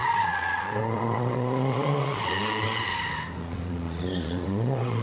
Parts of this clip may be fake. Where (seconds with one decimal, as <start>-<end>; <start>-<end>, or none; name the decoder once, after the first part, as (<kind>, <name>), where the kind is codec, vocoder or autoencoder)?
0.0-2.9 (vocoder, Vocos); 3.4-5.0